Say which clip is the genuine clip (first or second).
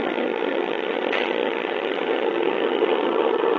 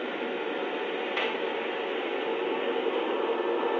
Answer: second